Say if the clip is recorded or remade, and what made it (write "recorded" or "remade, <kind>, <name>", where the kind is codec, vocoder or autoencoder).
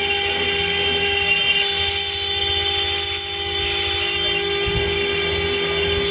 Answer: recorded